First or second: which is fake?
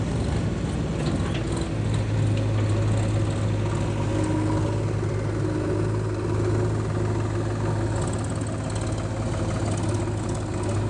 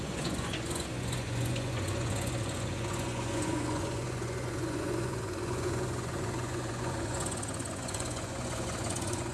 second